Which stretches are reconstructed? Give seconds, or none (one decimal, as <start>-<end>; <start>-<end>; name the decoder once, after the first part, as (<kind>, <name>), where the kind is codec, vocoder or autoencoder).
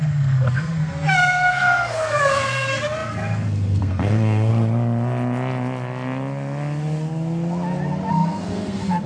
0.0-4.5 (codec, SNAC); 8.1-9.1